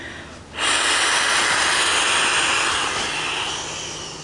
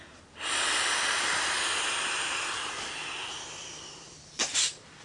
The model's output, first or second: second